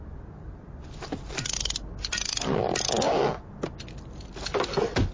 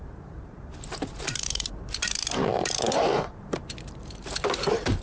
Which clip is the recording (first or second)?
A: first